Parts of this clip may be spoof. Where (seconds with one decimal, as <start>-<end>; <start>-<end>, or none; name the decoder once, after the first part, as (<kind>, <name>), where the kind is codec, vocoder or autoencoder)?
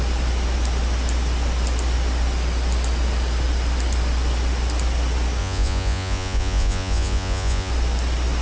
5.4-7.7 (vocoder, Vocos)